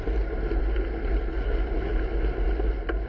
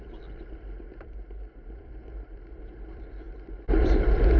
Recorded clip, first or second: first